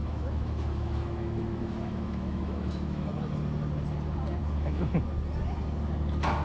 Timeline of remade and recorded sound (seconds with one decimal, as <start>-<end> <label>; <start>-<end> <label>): 0.0-3.1 remade; 3.1-4.4 recorded; 4.4-4.9 remade; 4.9-6.4 recorded